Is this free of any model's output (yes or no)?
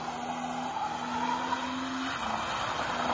yes